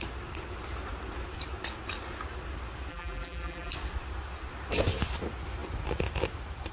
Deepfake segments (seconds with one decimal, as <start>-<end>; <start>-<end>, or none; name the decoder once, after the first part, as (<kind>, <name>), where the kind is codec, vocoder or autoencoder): 2.9-3.7 (vocoder, BigVGAN v2)